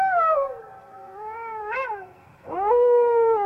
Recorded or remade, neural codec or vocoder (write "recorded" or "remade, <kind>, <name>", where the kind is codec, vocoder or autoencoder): remade, codec, SNAC